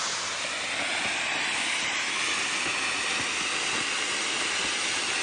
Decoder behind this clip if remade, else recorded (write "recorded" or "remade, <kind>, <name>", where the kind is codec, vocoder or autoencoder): recorded